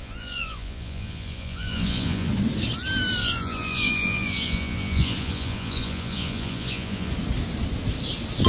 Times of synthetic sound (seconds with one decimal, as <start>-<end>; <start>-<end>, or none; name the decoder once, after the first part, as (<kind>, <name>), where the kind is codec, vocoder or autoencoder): 0.0-2.3 (vocoder, Vocos); 3.2-7.1